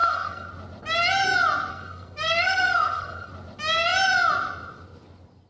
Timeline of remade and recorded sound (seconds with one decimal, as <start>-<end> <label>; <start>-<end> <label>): 0.0-0.5 remade; 0.5-1.7 recorded; 1.7-3.3 remade; 3.3-5.5 recorded